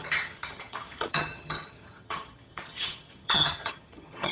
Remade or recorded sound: remade